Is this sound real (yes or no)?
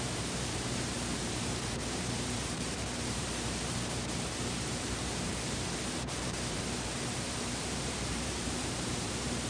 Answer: no